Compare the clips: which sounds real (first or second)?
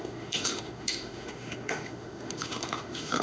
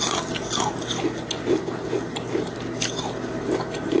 second